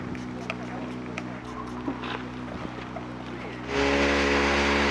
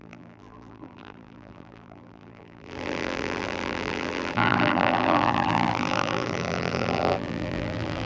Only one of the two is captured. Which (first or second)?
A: first